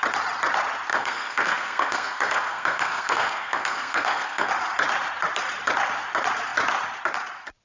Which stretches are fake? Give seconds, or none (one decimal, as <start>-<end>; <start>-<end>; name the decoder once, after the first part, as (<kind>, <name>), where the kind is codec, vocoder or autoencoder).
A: 0.9-4.5 (codec, SNAC)

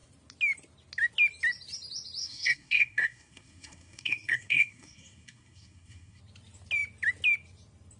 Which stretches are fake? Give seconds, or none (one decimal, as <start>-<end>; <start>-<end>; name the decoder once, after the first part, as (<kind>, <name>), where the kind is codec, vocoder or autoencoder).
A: 2.2-6.2 (codec, SNAC)